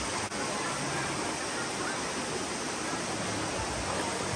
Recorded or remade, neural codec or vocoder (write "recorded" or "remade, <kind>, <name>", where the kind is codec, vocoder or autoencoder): recorded